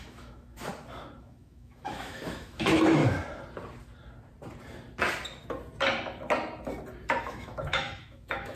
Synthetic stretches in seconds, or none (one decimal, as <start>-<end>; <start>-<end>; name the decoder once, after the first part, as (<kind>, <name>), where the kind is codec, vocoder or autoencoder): 0.0-0.7 (autoencoder, DAC-VAE); 1.2-3.0; 7.2-8.6